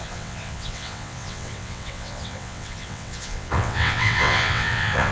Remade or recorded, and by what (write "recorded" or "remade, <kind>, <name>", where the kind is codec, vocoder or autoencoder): remade, vocoder, WaveNeXt